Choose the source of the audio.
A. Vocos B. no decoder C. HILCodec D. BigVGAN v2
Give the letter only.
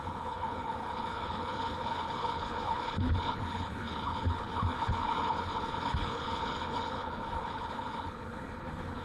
C